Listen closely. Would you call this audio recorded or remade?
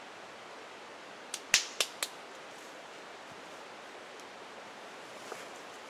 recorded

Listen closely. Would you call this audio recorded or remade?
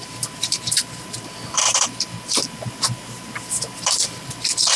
remade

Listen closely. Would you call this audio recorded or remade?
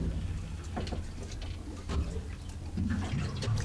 recorded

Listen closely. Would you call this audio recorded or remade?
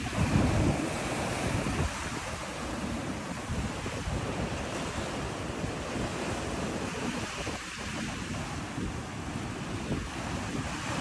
recorded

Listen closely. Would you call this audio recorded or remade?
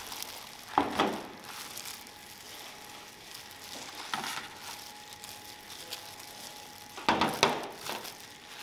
recorded